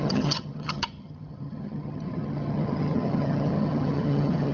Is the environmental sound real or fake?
fake